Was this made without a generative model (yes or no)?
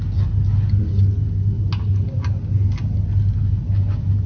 yes